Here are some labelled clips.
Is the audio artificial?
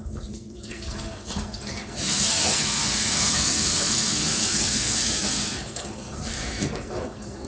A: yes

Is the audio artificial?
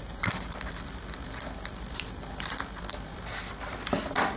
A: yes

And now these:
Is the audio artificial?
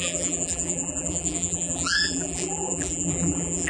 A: yes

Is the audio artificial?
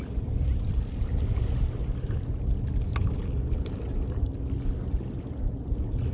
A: no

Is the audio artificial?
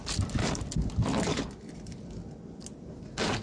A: no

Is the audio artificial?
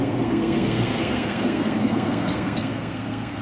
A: yes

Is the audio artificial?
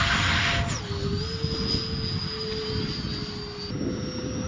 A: no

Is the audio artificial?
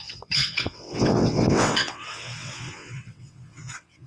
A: yes